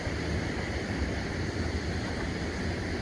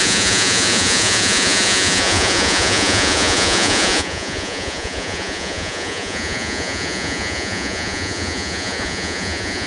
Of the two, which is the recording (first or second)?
first